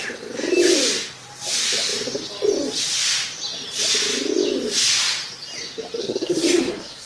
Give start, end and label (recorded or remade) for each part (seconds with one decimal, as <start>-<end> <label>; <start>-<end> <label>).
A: 0.0-6.0 recorded; 6.0-7.1 remade